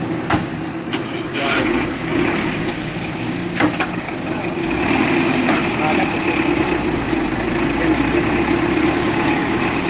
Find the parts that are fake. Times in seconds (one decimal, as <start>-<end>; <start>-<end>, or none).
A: 0.0-0.5; 1.6-4.6; 8.9-9.9